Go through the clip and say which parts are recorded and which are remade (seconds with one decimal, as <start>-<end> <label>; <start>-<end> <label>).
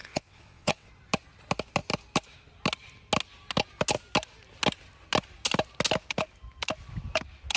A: 0.0-0.9 remade; 0.9-7.6 recorded